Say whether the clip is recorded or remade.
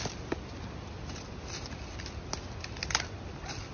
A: recorded